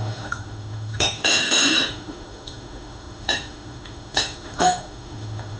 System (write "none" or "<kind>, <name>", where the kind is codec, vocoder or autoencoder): autoencoder, DAC-VAE